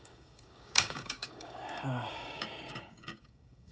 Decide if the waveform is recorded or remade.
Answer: remade